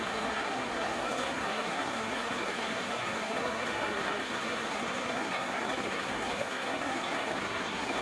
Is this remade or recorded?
remade